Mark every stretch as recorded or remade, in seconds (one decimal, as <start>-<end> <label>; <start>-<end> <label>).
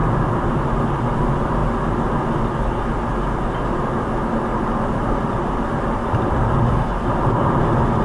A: 0.0-0.7 remade; 0.7-4.5 recorded; 4.5-5.3 remade; 5.3-6.0 recorded; 6.0-7.6 remade; 7.6-8.0 recorded